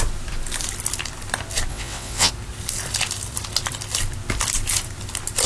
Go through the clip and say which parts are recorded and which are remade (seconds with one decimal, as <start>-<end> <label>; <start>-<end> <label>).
0.0-1.7 recorded; 1.7-2.3 remade; 2.3-5.5 recorded